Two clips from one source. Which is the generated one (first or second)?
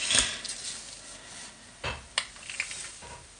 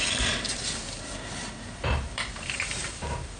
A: second